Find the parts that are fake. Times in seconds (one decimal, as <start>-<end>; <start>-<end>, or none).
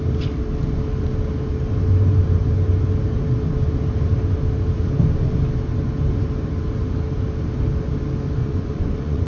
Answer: 8.4-9.3